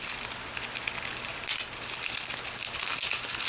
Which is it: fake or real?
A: real